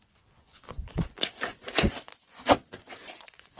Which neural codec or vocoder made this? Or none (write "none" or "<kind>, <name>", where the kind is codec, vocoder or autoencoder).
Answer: vocoder, Vocos